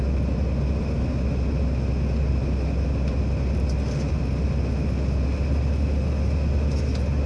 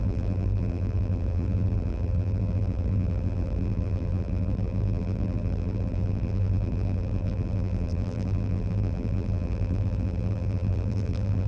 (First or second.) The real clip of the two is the first